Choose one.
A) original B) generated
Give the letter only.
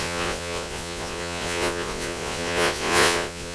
B